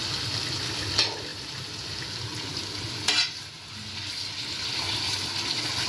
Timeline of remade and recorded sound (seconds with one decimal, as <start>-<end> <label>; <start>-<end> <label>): 0.0-1.3 recorded; 1.3-1.9 remade; 1.9-5.9 recorded